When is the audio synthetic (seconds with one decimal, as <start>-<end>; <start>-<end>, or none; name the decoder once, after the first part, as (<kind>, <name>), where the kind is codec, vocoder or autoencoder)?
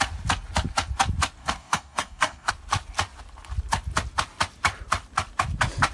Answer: 1.4-2.5 (codec, DAC)